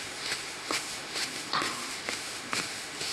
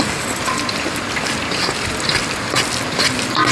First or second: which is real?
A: second